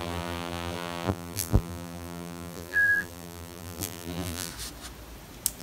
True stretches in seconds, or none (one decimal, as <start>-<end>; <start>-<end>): 4.5-5.6